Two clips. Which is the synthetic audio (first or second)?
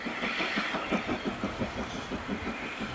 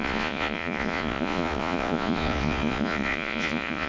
second